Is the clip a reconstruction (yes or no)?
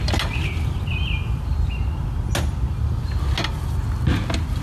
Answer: no